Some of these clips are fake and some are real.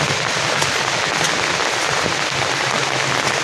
real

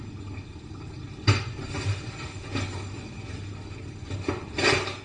real